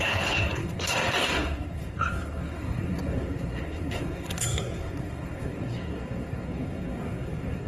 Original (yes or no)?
no